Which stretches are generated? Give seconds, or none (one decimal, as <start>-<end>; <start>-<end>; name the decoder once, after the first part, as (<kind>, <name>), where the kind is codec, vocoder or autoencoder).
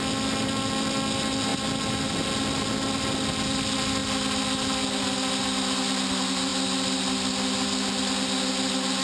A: none